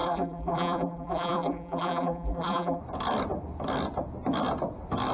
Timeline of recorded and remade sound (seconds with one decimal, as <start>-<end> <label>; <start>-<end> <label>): 0.0-2.8 remade; 2.8-5.1 recorded